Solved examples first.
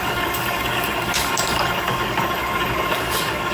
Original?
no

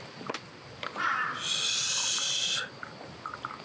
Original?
yes